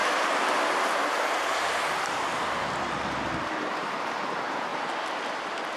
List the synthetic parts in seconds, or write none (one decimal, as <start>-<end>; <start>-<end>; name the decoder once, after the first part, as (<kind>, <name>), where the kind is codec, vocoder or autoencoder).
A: 1.1-2.3 (vocoder, BigVGAN v2); 3.4-4.7